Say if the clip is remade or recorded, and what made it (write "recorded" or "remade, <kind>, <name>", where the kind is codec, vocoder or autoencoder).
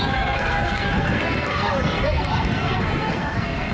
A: remade, codec, SNAC